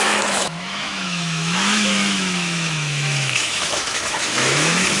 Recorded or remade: remade